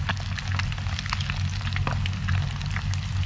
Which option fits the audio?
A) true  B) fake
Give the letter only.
A